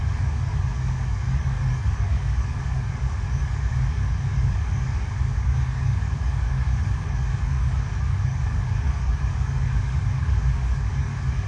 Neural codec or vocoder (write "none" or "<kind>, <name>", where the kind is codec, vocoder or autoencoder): codec, DAC